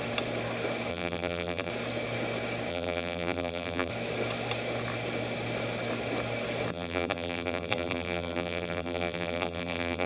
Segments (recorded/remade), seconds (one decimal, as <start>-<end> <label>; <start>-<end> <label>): 0.0-0.9 recorded; 0.9-1.7 remade; 1.7-2.7 recorded; 2.7-3.9 remade; 3.9-6.7 recorded; 6.7-10.1 remade